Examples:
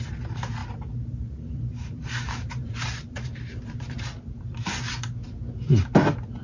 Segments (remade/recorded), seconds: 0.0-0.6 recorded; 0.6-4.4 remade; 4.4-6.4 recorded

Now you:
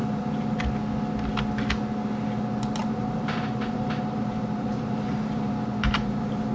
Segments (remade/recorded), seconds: 0.0-0.6 remade; 0.6-2.8 recorded; 2.8-6.5 remade